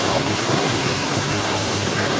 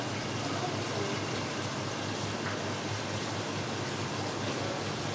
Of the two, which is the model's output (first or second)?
first